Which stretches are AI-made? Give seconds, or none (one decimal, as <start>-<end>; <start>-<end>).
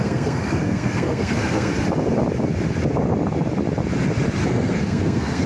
0.0-1.7; 4.5-5.5